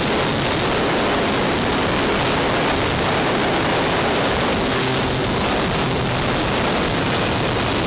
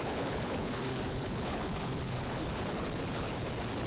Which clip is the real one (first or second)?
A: first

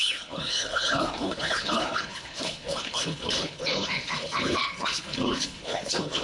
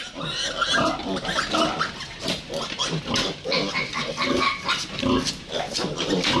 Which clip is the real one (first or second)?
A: second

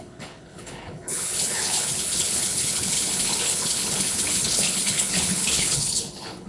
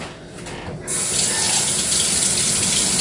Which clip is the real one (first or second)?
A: second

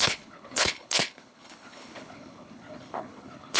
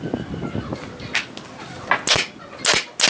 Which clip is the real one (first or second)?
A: second